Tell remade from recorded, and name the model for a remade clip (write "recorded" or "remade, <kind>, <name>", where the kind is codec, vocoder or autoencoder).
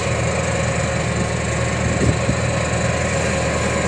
recorded